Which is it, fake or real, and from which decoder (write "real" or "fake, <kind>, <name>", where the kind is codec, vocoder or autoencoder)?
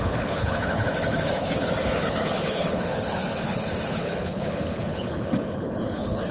fake, codec, HILCodec